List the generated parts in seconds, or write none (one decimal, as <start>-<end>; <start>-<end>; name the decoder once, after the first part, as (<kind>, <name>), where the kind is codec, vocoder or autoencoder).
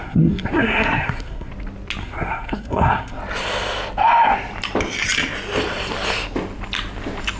0.0-1.5 (codec, SNAC); 2.0-3.2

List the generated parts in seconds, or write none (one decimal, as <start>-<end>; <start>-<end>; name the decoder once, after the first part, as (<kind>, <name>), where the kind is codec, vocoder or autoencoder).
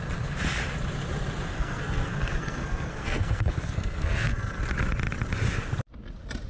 1.5-4.6 (codec, SNAC)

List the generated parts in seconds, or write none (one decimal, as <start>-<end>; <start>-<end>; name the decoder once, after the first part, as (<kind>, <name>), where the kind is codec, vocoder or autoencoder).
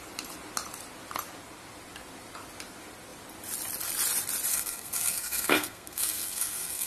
4.5-6.9 (codec, SNAC)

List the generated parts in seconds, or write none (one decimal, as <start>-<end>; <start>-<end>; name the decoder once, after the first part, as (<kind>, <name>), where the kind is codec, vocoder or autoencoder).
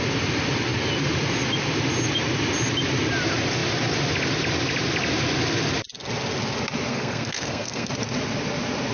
6.9-7.9 (codec, SNAC)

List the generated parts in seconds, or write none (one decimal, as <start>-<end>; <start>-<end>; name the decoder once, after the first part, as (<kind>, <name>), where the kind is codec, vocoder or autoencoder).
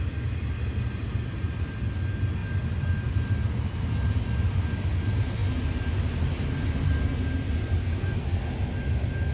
7.8-8.4 (codec, SNAC)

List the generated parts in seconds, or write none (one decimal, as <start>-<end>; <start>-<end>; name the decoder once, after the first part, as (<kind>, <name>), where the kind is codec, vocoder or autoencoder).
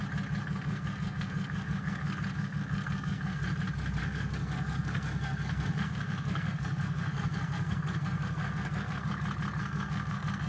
0.4-3.4 (codec, SNAC); 4.0-9.1; 9.6-10.5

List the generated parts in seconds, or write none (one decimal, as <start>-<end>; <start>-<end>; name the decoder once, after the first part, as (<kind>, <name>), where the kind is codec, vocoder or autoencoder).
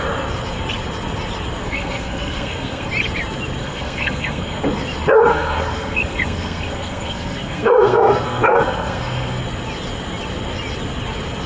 1.6-2.9 (codec, SNAC); 3.6-4.6; 5.3-9.4